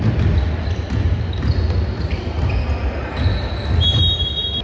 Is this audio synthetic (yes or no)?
no